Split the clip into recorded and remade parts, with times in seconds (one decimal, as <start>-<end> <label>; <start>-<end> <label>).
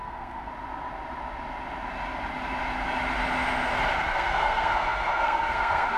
0.0-0.5 remade; 0.5-4.1 recorded; 4.1-6.0 remade